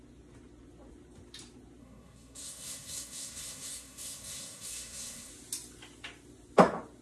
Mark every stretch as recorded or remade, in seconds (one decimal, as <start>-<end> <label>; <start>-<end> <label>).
0.0-1.8 recorded; 1.8-5.3 remade; 5.3-7.0 recorded